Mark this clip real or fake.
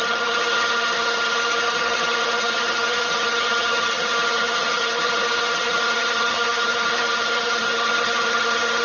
fake